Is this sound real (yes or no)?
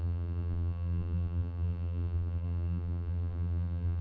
no